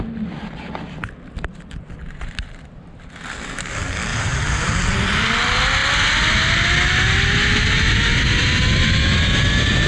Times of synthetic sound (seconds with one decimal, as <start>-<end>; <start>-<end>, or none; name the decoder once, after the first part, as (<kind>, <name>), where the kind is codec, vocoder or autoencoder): 2.0-2.5 (vocoder, BigVGAN v2); 4.1-4.7